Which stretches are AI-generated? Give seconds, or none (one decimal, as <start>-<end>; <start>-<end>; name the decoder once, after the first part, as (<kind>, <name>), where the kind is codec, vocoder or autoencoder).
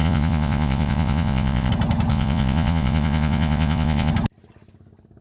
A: 0.0-1.7 (vocoder, Vocos); 2.1-4.1